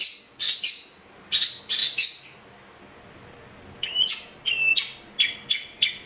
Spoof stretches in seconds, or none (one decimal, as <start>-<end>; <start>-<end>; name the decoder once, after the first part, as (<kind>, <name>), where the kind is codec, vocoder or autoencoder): none

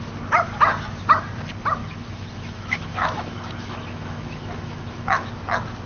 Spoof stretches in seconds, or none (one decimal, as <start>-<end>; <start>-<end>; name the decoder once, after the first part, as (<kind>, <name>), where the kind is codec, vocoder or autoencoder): 1.8-5.3 (autoencoder, DAC-VAE)

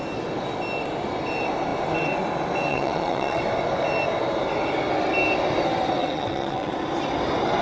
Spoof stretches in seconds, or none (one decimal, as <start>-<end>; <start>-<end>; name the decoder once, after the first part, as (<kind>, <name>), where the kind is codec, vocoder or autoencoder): 2.7-3.4 (vocoder, WaveNeXt); 6.0-6.7

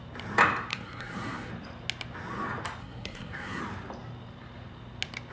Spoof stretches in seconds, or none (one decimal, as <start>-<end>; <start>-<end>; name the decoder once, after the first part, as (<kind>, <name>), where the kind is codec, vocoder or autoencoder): 0.7-1.5 (codec, SNAC); 2.8-3.6

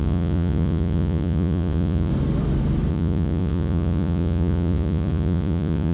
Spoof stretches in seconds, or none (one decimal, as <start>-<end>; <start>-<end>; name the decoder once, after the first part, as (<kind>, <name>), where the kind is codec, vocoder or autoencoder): 0.0-2.1 (vocoder, Vocos); 2.9-5.9

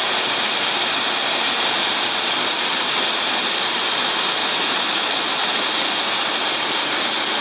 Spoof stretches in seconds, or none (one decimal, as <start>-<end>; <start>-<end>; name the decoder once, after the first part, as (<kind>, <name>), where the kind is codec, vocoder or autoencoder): 4.4-5.1 (autoencoder, DAC-VAE)